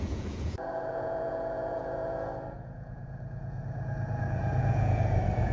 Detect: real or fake fake